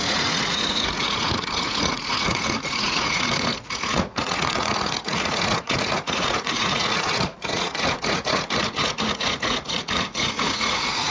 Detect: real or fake fake